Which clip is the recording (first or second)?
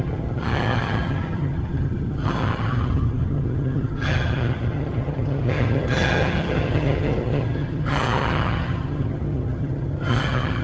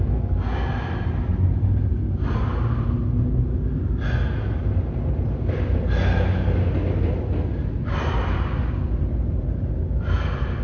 second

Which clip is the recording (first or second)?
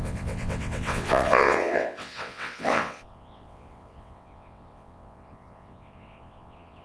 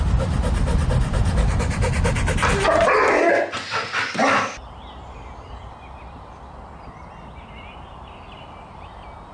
second